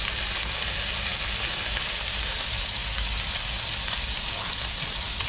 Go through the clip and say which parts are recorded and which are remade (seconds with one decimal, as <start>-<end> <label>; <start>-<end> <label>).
0.0-5.3 recorded